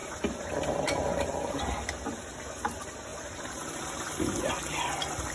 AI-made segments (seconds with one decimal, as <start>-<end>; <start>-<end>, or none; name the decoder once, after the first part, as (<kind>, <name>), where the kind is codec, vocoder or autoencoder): 0.0-0.8 (vocoder, BigVGAN v2); 3.1-4.4